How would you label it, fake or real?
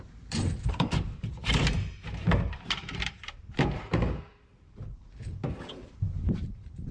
fake